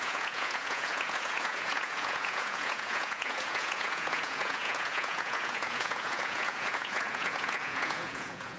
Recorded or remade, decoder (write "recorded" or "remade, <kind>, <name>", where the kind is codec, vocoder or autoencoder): remade, vocoder, Vocos